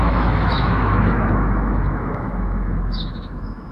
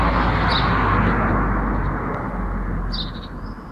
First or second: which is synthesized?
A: first